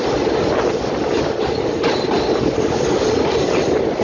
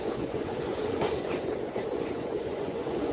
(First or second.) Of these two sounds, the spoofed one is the second